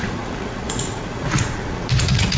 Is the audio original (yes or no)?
no